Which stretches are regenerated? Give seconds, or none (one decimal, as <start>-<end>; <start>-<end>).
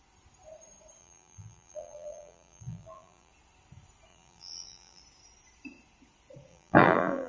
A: 1.0-3.3; 4.1-5.0; 6.5-7.3